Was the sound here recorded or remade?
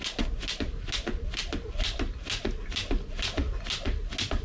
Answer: recorded